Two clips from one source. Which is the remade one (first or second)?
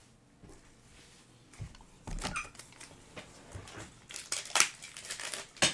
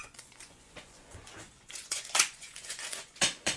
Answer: second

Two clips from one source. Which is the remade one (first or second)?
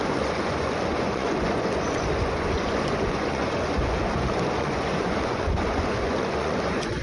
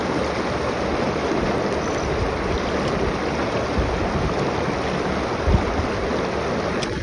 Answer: first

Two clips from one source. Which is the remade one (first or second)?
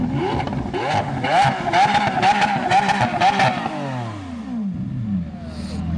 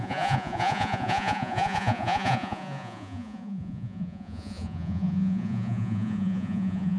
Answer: second